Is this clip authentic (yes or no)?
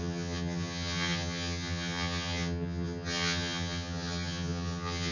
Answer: no